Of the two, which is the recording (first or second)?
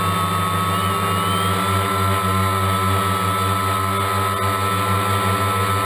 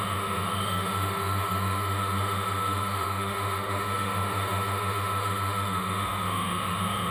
first